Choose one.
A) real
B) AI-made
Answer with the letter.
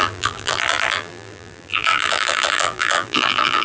B